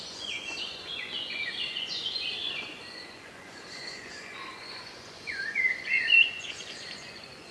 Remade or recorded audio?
remade